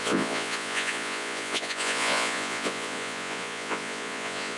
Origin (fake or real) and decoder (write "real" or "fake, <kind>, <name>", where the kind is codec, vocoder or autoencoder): fake, vocoder, Vocos